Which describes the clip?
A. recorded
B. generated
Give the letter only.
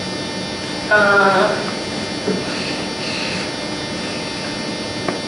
A